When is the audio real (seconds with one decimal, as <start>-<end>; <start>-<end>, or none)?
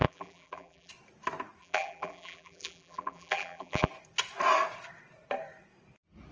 0.9-1.6; 3.9-6.3